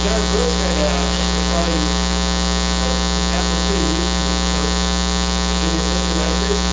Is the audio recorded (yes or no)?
no